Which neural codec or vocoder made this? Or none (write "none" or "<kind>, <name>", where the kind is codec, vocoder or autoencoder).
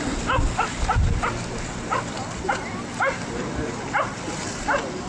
none